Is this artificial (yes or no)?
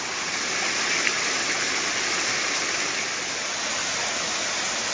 no